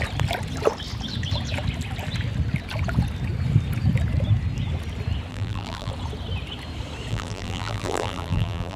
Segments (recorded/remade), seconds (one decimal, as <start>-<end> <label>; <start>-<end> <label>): 0.0-5.3 recorded; 5.3-5.9 remade; 5.9-7.1 recorded; 7.1-8.8 remade